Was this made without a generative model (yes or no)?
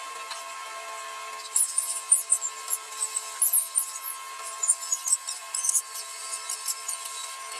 yes